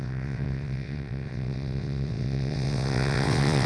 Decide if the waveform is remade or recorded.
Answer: remade